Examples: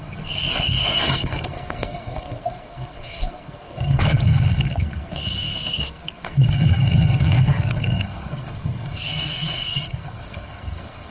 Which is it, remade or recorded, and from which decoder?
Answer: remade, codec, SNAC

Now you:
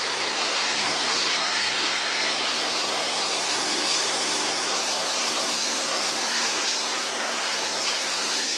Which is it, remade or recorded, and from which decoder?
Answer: remade, codec, SNAC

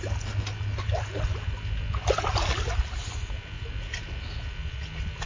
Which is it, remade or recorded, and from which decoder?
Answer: recorded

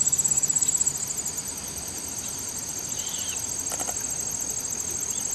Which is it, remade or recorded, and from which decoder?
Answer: recorded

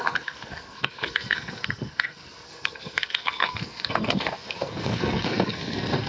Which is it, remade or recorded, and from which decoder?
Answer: remade, codec, SNAC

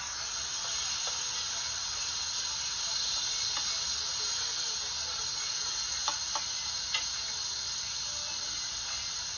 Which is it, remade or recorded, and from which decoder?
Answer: recorded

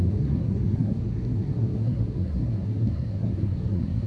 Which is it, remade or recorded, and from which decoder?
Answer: remade, codec, SNAC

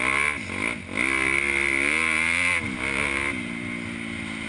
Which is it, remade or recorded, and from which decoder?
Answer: recorded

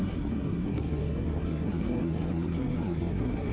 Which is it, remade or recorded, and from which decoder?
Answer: remade, codec, SNAC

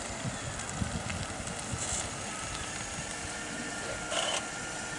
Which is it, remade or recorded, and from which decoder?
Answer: recorded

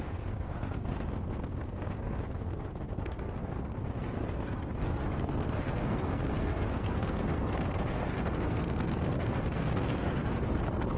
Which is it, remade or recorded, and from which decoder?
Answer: remade, codec, SNAC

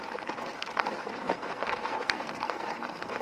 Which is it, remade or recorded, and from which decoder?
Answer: remade, codec, SNAC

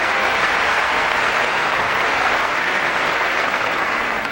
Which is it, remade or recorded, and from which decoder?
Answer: remade, codec, SNAC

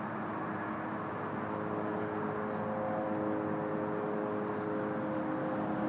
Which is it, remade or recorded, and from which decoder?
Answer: recorded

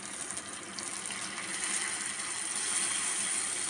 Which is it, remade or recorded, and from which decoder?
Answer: recorded